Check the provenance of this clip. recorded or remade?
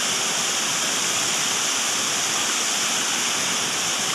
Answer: recorded